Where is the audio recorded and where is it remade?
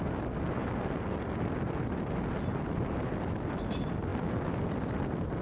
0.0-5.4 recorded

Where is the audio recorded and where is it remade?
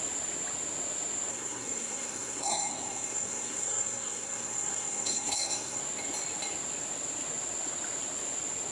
0.0-1.3 recorded; 1.3-5.8 remade; 5.8-8.7 recorded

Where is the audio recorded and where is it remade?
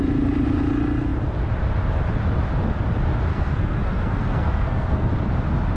0.0-3.3 recorded; 3.3-5.1 remade; 5.1-5.8 recorded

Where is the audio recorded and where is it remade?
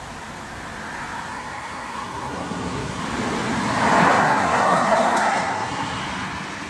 0.0-1.3 recorded; 1.3-3.0 remade; 3.0-4.0 recorded; 4.0-6.0 remade; 6.0-6.7 recorded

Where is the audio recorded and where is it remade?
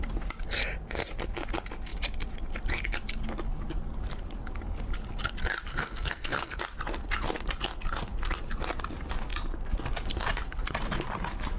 0.0-5.7 recorded; 5.7-6.6 remade; 6.6-11.6 recorded